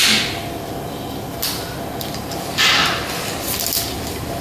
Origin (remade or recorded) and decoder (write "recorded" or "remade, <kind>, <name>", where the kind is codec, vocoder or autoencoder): recorded